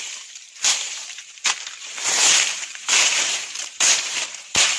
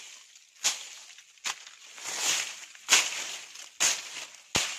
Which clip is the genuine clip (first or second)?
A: second